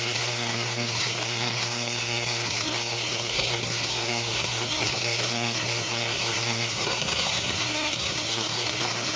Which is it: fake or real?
fake